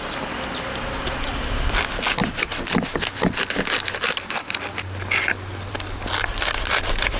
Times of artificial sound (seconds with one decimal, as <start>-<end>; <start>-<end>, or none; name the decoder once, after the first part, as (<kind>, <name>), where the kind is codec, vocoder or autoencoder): none